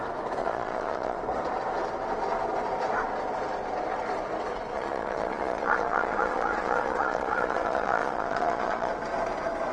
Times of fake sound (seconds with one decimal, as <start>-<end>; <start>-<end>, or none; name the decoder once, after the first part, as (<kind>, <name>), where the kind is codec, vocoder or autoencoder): 0.4-1.2 (vocoder, Vocos); 4.7-8.9